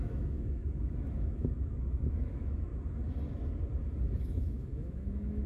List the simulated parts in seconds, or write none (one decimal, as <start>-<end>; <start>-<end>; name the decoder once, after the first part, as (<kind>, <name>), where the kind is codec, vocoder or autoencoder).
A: 0.0-2.7 (autoencoder, DAC-VAE); 4.2-5.5